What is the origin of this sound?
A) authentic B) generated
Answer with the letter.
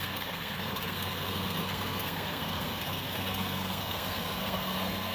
B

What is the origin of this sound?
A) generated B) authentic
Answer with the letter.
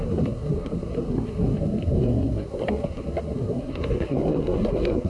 A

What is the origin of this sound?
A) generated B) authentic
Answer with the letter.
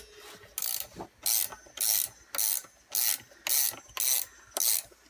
B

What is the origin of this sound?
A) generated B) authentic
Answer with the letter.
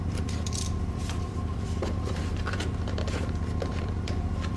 A